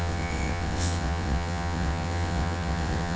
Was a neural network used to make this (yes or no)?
yes